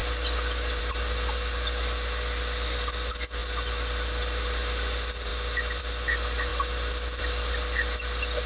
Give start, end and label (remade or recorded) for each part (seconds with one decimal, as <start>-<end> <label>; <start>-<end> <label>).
0.0-8.5 recorded